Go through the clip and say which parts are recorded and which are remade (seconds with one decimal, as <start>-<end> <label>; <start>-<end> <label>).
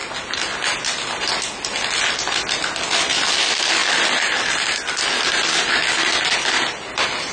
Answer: 0.0-7.3 recorded